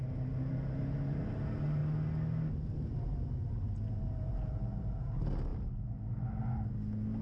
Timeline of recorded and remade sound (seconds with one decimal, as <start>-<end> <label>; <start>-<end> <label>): 0.0-7.2 recorded